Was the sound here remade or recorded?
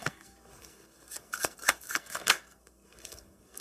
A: remade